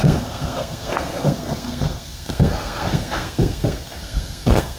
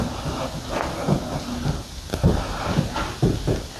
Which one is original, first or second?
second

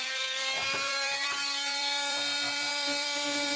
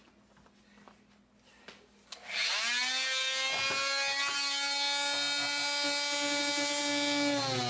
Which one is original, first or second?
second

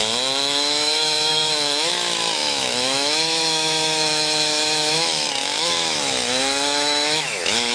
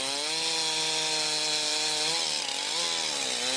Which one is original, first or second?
second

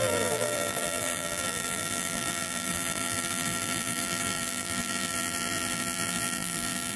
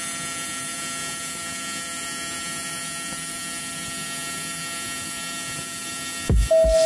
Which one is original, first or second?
second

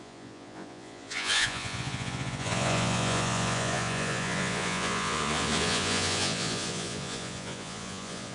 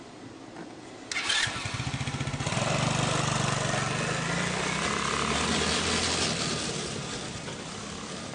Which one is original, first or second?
second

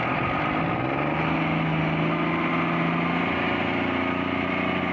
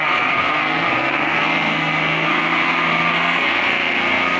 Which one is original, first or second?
first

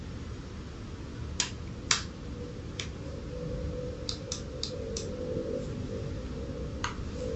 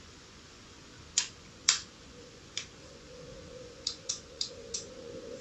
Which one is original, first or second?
first